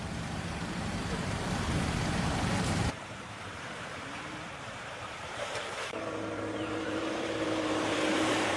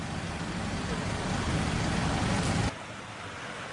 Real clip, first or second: second